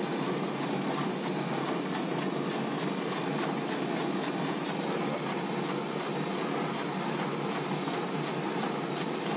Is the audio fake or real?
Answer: real